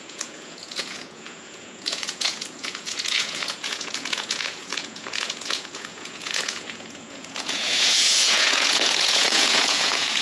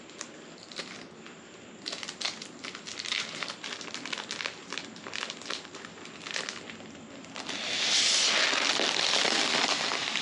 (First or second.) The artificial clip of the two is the first